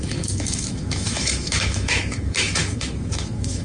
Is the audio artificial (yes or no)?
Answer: yes